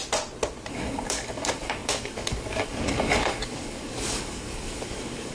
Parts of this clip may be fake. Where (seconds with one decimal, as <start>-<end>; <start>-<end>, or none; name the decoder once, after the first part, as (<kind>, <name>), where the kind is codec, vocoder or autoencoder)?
0.7-5.3 (codec, DAC)

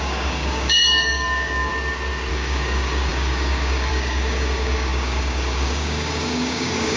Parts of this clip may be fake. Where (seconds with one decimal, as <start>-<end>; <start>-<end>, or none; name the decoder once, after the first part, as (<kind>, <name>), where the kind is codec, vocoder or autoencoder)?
0.0-1.7 (codec, DAC); 2.3-7.0

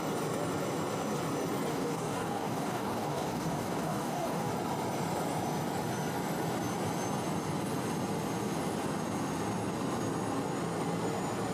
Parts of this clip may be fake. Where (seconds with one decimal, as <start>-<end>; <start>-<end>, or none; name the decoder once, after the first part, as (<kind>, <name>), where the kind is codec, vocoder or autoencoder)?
1.7-4.5 (codec, DAC)

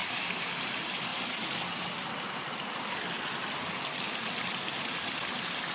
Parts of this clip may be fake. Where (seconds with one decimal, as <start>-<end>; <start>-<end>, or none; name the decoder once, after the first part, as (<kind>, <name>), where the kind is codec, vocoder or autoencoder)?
0.0-0.6 (codec, DAC)